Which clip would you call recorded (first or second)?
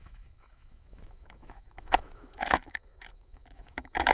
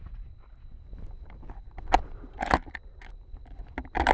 second